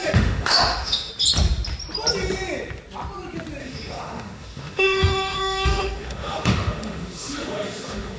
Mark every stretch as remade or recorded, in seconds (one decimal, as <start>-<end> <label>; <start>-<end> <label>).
0.0-1.1 remade; 1.1-3.6 recorded; 3.6-8.2 remade

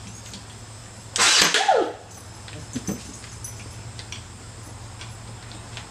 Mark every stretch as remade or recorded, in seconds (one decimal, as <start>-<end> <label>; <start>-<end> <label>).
0.0-5.9 recorded

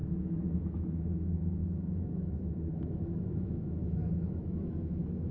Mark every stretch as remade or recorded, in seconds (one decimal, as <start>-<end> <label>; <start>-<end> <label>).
0.0-5.3 remade

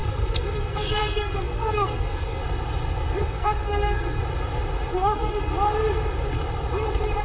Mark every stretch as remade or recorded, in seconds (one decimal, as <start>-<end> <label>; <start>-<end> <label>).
0.0-2.4 remade; 2.4-3.2 recorded; 3.2-4.2 remade; 4.2-4.9 recorded; 4.9-5.5 remade; 5.5-7.2 recorded